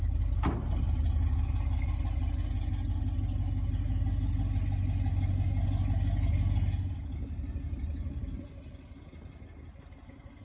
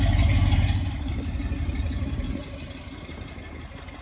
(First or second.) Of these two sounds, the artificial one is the second